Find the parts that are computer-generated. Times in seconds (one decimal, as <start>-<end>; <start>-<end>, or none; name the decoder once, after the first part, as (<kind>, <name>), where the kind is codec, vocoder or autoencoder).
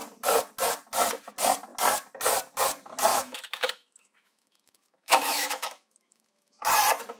3.1-6.6 (autoencoder, DAC-VAE)